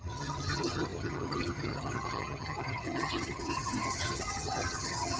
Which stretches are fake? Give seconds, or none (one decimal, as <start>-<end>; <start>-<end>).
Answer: 0.0-5.2